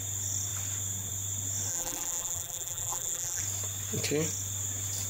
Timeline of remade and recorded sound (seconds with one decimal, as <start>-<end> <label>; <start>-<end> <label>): 0.0-1.7 recorded; 1.7-3.4 remade; 3.4-5.1 recorded